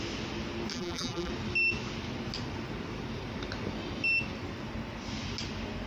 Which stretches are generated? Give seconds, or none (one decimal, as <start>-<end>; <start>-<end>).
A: 0.7-1.3